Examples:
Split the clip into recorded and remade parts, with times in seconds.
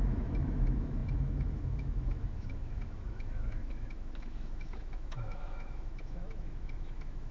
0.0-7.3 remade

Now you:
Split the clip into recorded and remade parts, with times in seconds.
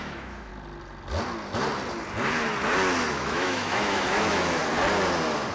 0.0-0.5 remade; 0.5-3.1 recorded; 3.1-4.6 remade; 4.6-5.5 recorded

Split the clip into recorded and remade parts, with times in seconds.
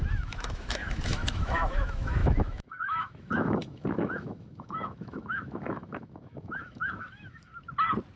0.0-7.5 remade; 7.5-8.2 recorded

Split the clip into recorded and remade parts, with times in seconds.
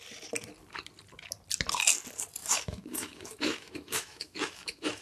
0.0-2.4 recorded; 2.4-5.0 remade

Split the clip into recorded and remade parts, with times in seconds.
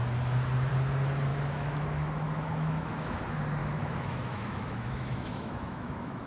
0.0-1.3 recorded; 1.3-3.2 remade; 3.2-3.6 recorded; 3.6-6.3 remade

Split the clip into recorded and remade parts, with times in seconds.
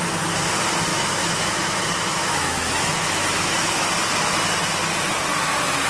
0.0-0.9 recorded; 0.9-3.9 remade; 3.9-5.9 recorded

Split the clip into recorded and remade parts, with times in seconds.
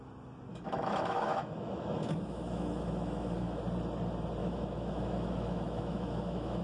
0.0-0.5 recorded; 0.5-3.6 remade; 3.6-4.4 recorded; 4.4-6.6 remade